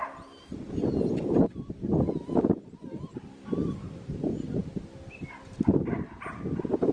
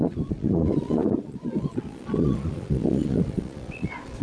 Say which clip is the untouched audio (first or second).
first